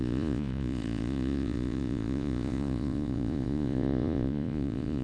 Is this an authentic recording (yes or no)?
no